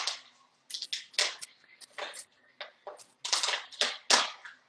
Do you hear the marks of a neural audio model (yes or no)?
no